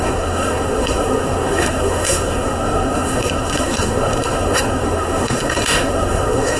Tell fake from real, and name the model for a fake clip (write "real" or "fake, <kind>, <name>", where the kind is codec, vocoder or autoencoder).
fake, codec, SNAC